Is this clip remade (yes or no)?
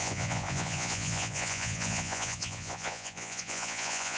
yes